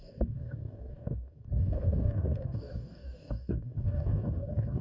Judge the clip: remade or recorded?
remade